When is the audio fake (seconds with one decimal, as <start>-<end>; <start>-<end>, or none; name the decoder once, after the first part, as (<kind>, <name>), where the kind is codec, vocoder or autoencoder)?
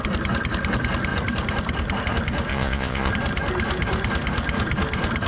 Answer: 2.5-3.1 (vocoder, Vocos)